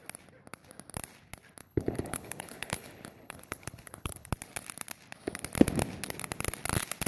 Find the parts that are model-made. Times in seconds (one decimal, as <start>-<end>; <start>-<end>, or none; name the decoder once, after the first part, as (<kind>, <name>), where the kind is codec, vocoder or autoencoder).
1.6-4.3 (codec, HILCodec)